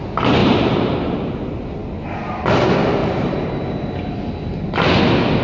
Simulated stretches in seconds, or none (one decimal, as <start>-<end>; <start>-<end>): 0.4-1.1; 3.0-4.1